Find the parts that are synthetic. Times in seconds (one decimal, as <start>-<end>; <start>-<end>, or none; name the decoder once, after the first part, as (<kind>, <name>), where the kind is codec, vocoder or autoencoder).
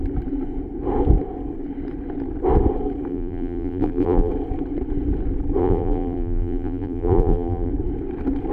3.1-4.3 (vocoder, BigVGAN v2); 5.6-7.7